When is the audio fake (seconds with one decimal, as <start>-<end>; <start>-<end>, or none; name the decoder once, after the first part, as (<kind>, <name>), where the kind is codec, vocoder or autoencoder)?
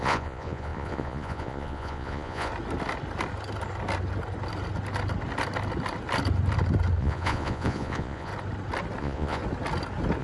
0.0-2.5 (vocoder, Vocos); 7.0-8.3; 9.0-9.4